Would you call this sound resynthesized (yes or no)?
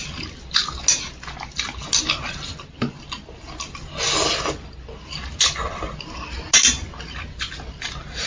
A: no